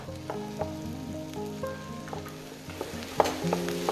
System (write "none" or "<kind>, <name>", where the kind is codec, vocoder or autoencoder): none